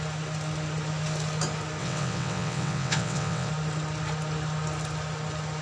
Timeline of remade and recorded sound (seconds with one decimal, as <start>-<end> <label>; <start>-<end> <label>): 0.0-1.8 recorded; 1.8-3.5 remade; 3.5-5.6 recorded

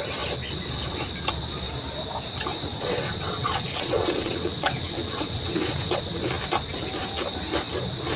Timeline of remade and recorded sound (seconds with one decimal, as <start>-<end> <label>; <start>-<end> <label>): 0.0-2.7 recorded; 2.7-6.2 remade; 6.2-8.2 recorded

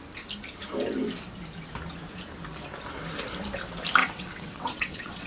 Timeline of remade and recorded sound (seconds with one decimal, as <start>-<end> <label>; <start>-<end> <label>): 0.0-4.0 recorded; 4.0-5.3 remade

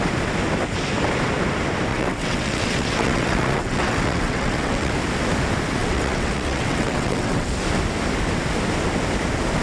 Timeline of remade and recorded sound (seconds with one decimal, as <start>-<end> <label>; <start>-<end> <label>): 0.0-1.9 recorded; 1.9-4.9 remade; 4.9-5.8 recorded; 5.8-7.5 remade; 7.5-9.6 recorded